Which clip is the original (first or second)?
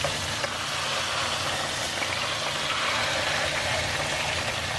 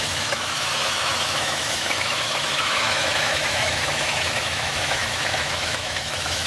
first